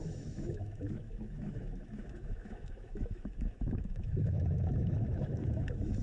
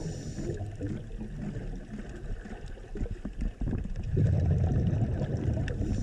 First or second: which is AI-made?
first